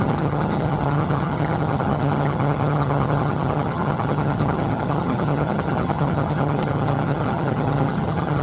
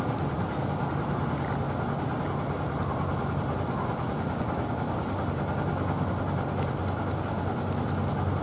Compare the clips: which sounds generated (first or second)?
first